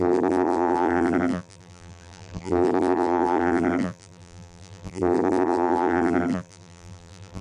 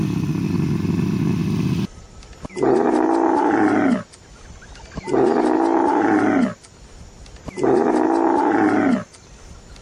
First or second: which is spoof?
first